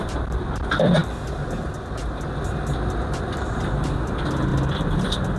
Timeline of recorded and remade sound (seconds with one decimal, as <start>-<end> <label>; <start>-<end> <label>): 0.0-5.4 recorded